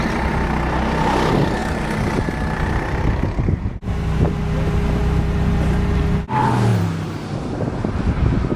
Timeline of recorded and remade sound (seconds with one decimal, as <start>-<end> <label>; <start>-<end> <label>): 0.0-1.6 recorded; 1.6-2.2 remade; 2.2-6.7 recorded; 6.7-7.6 remade; 7.6-8.6 recorded